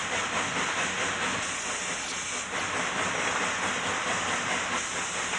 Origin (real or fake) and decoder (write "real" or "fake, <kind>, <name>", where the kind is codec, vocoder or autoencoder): real